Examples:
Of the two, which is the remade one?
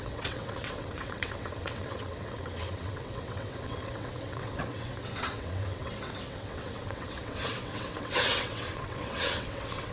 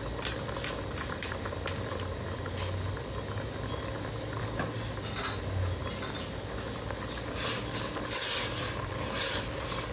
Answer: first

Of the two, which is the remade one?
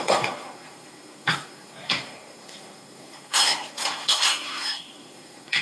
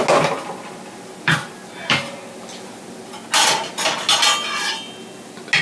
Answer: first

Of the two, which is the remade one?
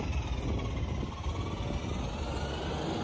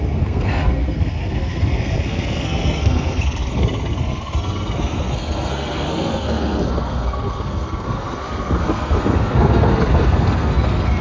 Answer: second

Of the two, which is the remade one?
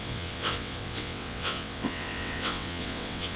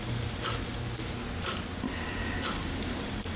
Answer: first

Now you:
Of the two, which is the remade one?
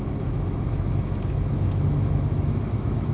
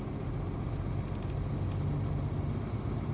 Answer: first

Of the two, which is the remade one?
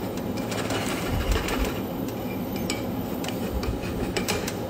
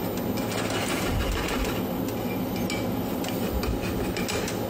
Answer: first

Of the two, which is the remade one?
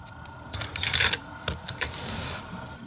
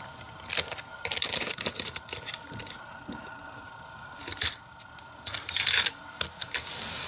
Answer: first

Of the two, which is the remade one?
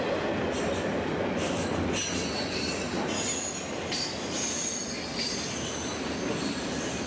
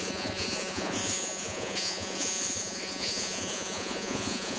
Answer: second